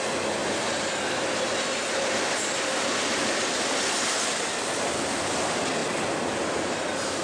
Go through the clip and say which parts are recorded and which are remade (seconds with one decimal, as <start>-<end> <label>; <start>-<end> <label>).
0.0-7.2 recorded